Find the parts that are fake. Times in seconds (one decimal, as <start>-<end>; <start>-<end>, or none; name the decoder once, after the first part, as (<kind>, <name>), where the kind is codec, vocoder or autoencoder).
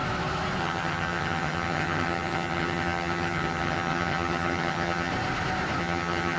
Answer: 0.6-5.1 (vocoder, HiFi-GAN); 5.8-6.4